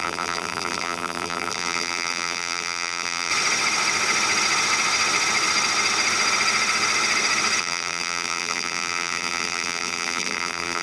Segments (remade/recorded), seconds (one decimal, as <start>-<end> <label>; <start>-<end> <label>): 0.0-3.3 remade; 3.3-7.6 recorded; 7.6-10.8 remade